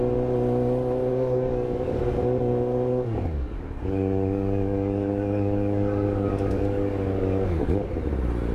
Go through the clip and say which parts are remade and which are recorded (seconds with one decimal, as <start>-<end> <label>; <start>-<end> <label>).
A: 0.0-1.1 recorded; 1.1-2.0 remade; 2.0-2.9 recorded; 2.9-7.9 remade; 7.9-8.5 recorded